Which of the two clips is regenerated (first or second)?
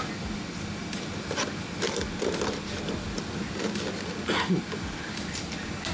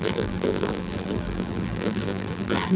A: second